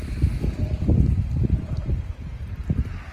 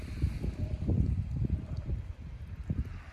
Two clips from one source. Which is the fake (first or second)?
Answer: second